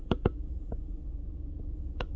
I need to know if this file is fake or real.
fake